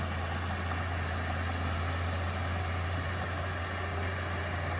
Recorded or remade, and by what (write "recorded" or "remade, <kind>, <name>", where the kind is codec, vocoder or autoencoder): recorded